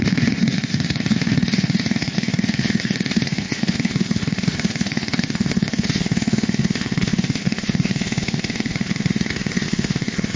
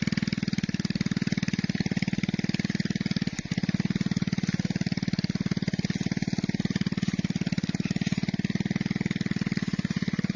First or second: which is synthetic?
first